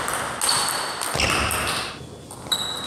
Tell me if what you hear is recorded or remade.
recorded